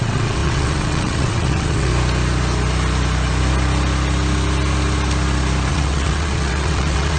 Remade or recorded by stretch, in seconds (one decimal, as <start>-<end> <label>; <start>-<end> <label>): 0.0-1.9 remade; 1.9-5.7 recorded; 5.7-7.2 remade